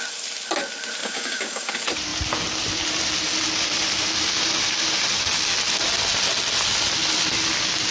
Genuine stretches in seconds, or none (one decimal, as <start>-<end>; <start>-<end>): 0.0-1.0; 1.7-7.9